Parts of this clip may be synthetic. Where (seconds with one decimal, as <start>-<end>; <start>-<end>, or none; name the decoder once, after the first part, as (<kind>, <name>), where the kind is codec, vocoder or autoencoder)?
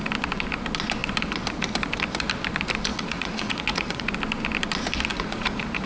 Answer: 2.9-4.1 (vocoder, Vocos); 5.1-5.9